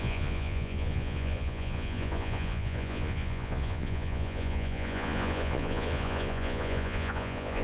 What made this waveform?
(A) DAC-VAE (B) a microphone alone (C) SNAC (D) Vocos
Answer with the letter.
D